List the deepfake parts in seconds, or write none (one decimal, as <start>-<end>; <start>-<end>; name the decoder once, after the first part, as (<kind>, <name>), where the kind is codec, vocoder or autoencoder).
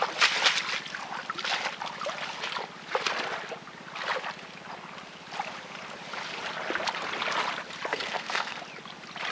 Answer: 7.9-8.6 (codec, SNAC)